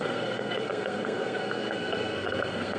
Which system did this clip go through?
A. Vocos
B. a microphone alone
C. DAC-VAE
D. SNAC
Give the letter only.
D